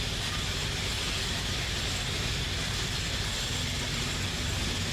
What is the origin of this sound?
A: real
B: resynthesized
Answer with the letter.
A